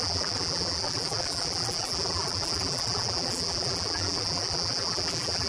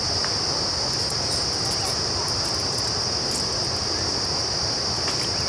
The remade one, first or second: first